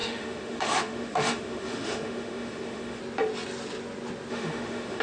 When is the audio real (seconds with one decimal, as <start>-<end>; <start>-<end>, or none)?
3.0-4.3